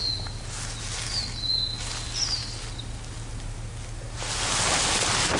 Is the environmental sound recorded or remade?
recorded